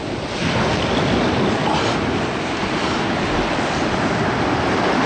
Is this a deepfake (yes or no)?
no